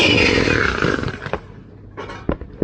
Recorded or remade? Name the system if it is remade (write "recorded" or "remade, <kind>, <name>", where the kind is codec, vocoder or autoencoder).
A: recorded